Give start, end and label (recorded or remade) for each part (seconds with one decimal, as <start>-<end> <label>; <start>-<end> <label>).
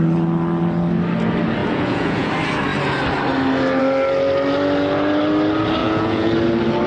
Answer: 0.0-1.6 recorded; 1.6-2.3 remade; 2.3-5.8 recorded; 5.8-6.3 remade; 6.3-6.9 recorded